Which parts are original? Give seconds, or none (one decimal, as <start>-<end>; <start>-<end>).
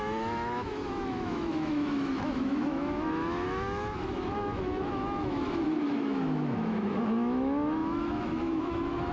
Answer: none